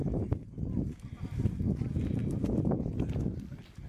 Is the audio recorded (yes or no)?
yes